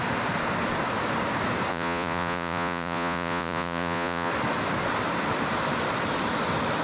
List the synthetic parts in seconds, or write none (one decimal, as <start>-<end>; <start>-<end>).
1.7-4.3